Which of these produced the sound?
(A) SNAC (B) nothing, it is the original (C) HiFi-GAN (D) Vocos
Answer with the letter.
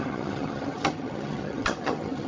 C